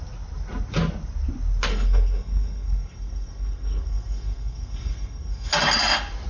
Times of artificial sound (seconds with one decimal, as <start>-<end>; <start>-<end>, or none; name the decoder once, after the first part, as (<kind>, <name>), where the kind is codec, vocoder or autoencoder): 1.7-5.5 (codec, SNAC)